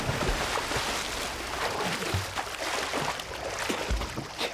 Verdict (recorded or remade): recorded